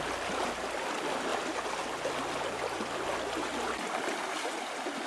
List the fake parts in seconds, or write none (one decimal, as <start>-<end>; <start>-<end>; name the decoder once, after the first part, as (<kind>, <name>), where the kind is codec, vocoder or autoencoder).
none